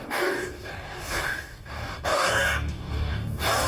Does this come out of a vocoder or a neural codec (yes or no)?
yes